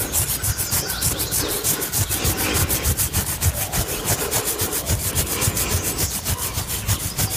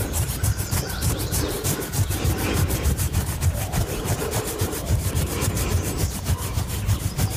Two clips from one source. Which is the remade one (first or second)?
second